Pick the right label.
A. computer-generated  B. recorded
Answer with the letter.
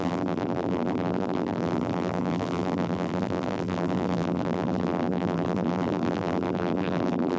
A